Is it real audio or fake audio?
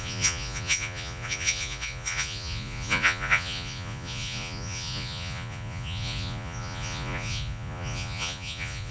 fake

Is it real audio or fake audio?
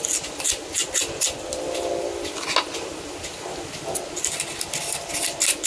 real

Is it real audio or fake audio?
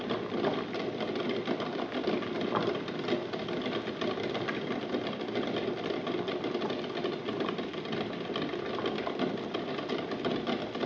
real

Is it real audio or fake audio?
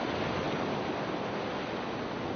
real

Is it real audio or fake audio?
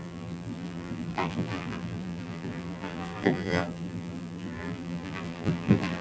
fake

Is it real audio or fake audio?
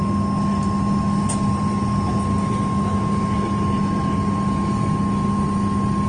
real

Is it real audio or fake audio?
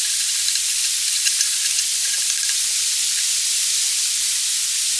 real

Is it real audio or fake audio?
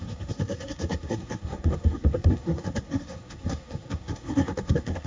fake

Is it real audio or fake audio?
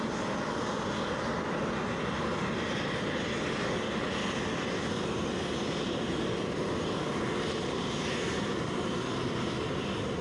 real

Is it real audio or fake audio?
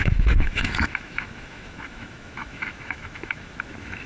fake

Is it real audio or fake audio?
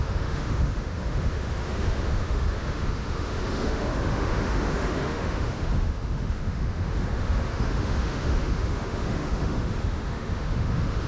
fake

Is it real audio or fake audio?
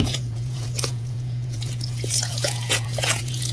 fake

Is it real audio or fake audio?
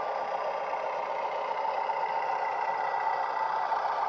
real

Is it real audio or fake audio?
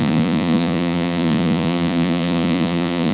fake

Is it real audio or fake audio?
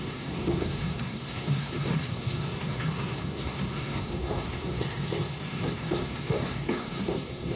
fake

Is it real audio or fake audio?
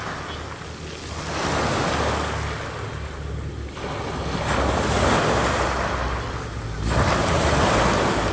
real